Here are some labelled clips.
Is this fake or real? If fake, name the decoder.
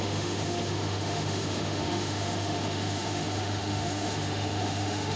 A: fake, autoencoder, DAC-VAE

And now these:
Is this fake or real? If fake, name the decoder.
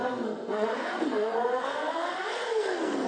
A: fake, codec, SNAC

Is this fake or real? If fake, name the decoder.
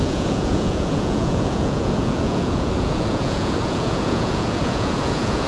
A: fake, vocoder, Vocos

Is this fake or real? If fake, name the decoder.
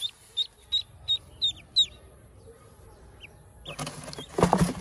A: real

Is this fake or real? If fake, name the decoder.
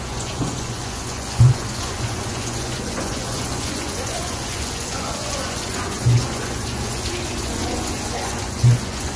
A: fake, vocoder, Vocos